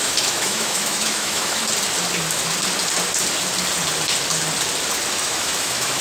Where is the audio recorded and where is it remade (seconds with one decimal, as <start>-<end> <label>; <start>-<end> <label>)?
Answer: 0.0-1.6 remade; 1.6-5.2 recorded; 5.2-6.0 remade